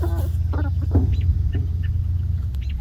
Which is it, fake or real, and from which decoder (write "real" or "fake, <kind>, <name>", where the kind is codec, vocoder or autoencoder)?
real